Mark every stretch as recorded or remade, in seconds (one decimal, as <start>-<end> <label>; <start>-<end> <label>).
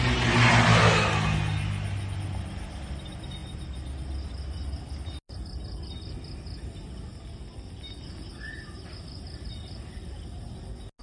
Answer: 0.0-11.0 recorded